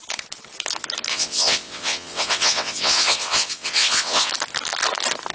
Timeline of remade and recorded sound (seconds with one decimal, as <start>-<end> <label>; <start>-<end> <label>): 0.0-1.1 recorded; 1.1-4.3 remade; 4.3-5.3 recorded